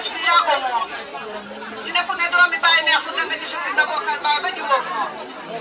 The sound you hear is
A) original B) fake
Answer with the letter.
A